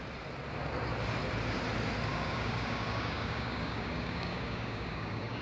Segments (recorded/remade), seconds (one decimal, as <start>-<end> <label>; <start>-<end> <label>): 0.0-2.1 recorded; 2.1-5.4 remade